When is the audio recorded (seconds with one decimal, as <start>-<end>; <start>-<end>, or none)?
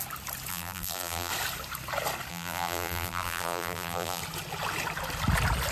0.0-0.5; 1.3-2.3; 4.2-5.7